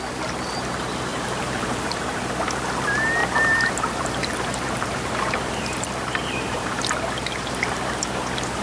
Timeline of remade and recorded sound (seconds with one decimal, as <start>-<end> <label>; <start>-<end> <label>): 0.0-1.1 recorded; 1.1-2.3 remade; 2.3-3.2 recorded; 3.2-6.8 remade; 6.8-8.6 recorded